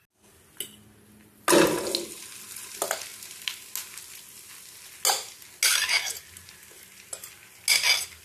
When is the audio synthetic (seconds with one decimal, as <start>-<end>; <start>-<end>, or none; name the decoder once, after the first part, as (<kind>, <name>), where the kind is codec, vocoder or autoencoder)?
none